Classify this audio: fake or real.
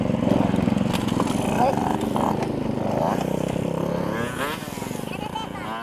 real